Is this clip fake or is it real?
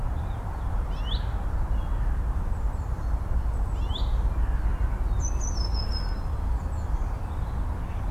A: real